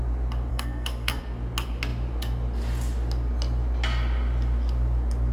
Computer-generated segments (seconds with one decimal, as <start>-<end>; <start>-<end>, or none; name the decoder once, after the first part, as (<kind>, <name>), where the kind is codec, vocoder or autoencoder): 0.5-1.2 (codec, SNAC)